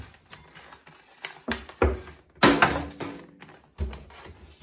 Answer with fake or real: real